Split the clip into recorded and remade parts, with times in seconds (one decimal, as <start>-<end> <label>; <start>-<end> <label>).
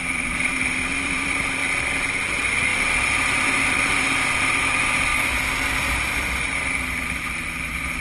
0.0-1.6 remade; 1.6-2.1 recorded; 2.1-5.1 remade; 5.1-5.9 recorded; 5.9-8.0 remade